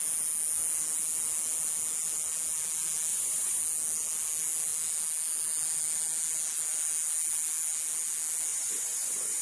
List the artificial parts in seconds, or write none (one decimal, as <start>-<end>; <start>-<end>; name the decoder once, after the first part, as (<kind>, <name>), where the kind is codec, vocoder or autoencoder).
3.1-3.6 (vocoder, Vocos); 8.5-9.4